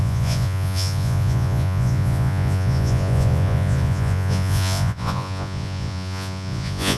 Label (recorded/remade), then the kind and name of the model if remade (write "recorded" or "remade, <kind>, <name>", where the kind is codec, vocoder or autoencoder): remade, vocoder, Vocos